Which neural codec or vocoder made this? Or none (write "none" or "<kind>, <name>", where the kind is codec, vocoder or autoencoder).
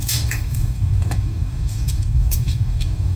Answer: codec, DAC